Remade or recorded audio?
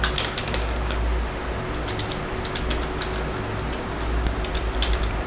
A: recorded